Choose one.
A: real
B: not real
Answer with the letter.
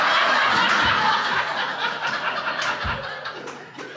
B